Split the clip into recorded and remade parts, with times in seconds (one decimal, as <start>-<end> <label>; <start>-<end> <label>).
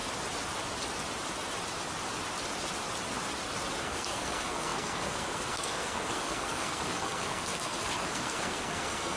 0.0-3.8 recorded; 3.8-9.2 remade